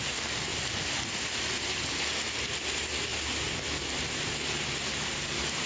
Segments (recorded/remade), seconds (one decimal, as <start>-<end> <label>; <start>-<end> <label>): 0.0-0.5 recorded; 0.5-2.0 remade; 2.0-3.1 recorded; 3.1-4.3 remade; 4.3-5.7 recorded